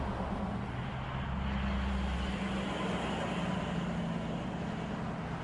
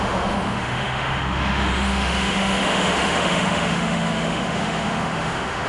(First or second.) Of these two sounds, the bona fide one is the first